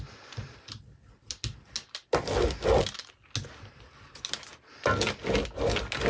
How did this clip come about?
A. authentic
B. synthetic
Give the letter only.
A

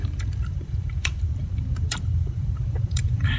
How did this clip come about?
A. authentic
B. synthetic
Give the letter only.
B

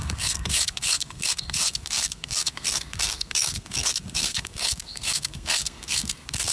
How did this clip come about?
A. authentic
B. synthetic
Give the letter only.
B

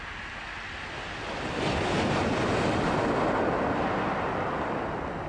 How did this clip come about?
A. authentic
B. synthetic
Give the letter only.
A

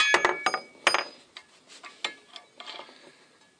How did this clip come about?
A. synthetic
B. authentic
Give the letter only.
B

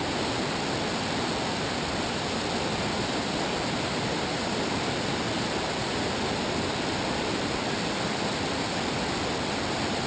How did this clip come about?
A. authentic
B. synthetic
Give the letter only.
A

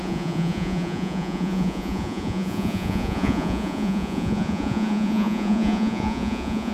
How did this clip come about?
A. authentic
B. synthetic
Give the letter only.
B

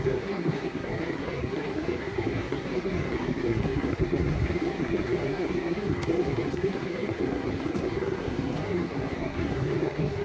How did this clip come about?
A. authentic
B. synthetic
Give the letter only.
B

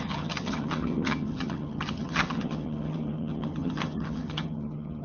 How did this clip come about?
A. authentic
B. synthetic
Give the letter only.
B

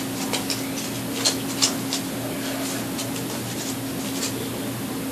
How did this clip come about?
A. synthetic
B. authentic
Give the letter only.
B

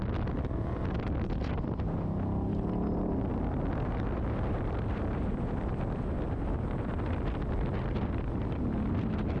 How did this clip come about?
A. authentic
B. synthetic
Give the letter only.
A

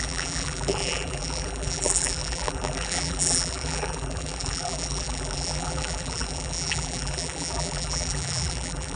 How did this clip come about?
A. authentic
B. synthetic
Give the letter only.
B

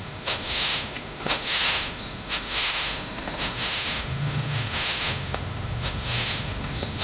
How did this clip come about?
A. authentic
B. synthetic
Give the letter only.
B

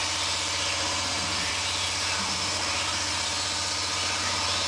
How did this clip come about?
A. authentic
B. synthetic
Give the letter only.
A